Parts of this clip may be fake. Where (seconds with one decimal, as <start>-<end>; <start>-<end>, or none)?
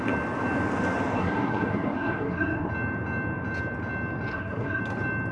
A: 1.2-2.7; 4.3-4.8